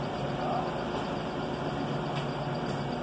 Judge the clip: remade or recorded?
recorded